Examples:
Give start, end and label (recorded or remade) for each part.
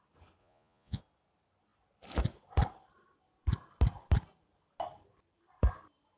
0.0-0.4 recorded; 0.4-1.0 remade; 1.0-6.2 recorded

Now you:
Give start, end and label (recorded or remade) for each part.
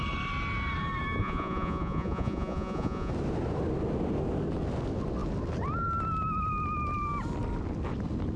0.0-1.2 recorded; 1.2-3.1 remade; 3.1-8.4 recorded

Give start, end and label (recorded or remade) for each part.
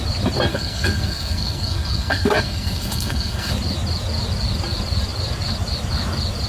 0.0-0.5 recorded; 0.5-3.5 remade; 3.5-6.5 recorded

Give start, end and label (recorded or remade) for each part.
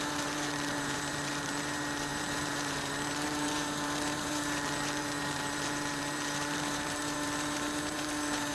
0.0-8.5 remade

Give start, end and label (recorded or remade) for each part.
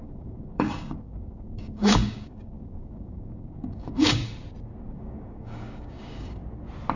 0.0-4.2 remade; 4.2-4.9 recorded; 4.9-6.4 remade; 6.4-7.0 recorded